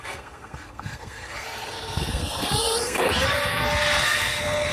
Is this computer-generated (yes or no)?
yes